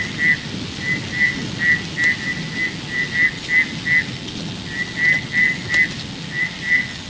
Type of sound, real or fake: real